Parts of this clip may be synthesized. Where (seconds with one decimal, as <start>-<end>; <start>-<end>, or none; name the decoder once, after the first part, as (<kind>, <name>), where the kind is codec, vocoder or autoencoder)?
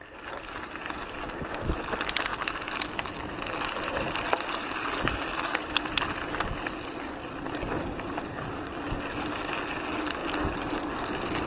none